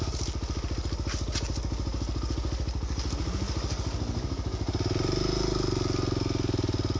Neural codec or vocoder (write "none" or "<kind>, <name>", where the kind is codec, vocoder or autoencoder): none